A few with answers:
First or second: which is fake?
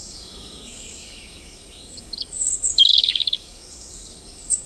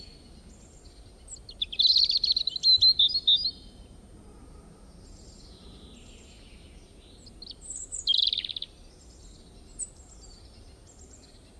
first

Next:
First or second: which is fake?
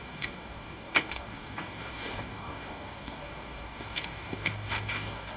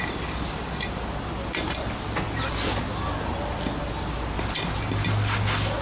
first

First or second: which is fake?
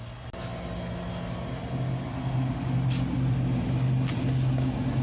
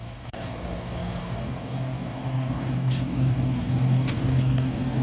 second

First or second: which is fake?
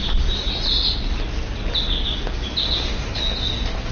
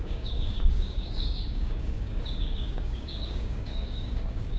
second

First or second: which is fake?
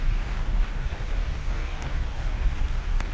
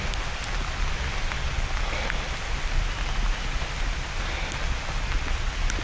first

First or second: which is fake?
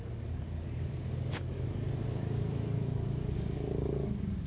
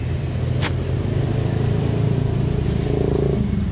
first